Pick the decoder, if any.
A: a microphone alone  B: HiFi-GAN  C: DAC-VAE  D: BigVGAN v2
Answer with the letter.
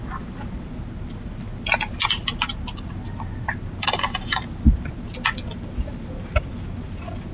A